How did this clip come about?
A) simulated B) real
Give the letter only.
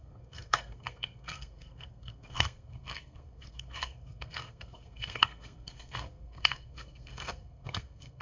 A